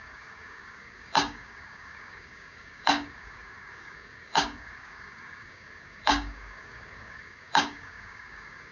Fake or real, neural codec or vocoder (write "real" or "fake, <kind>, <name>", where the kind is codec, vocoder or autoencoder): fake, codec, DAC